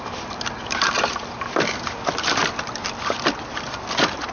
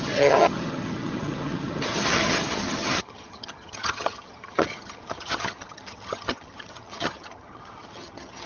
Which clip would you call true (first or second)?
first